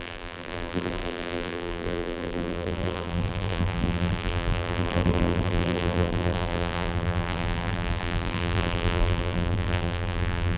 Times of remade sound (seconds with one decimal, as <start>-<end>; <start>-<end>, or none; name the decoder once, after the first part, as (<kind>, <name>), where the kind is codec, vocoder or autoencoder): 0.0-10.6 (vocoder, BigVGAN v2)